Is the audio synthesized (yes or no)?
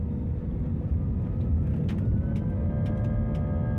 no